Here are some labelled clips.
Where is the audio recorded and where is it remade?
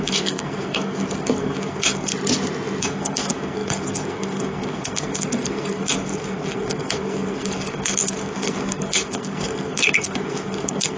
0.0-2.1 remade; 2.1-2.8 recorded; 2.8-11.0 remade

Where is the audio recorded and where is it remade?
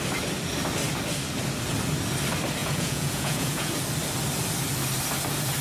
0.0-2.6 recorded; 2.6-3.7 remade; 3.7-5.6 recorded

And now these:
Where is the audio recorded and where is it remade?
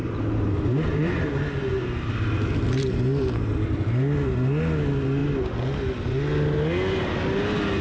0.0-1.1 remade; 1.1-7.8 recorded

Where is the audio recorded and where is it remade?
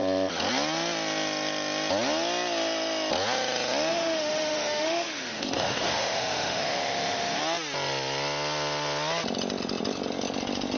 0.0-3.9 recorded; 3.9-7.4 remade; 7.4-10.8 recorded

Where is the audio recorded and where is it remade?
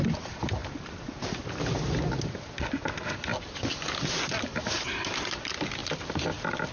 0.0-6.7 recorded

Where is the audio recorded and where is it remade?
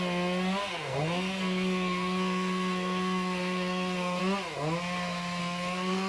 0.0-0.6 recorded; 0.6-4.2 remade; 4.2-5.4 recorded; 5.4-6.1 remade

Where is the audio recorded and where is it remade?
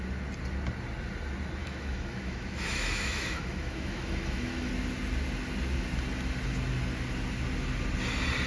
0.0-1.6 recorded; 1.6-4.7 remade; 4.7-8.5 recorded